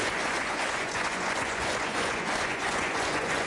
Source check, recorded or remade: remade